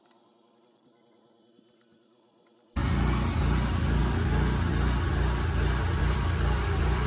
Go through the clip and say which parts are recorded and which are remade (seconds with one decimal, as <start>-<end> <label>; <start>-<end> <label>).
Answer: 0.0-2.8 remade; 2.8-3.4 recorded; 3.4-4.0 remade; 4.0-6.0 recorded; 6.0-7.1 remade